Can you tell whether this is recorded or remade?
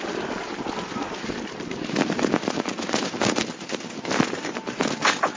recorded